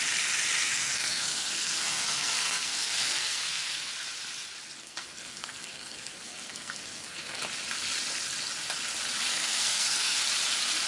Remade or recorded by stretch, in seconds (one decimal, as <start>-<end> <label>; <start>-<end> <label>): 0.0-0.6 recorded; 0.6-3.9 remade; 3.9-4.8 recorded; 4.8-7.4 remade; 7.4-9.3 recorded; 9.3-10.2 remade; 10.2-10.9 recorded